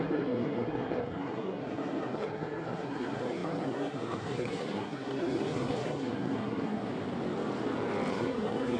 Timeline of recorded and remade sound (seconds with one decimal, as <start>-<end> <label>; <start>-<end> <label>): 0.0-6.9 remade; 6.9-8.1 recorded; 8.1-8.8 remade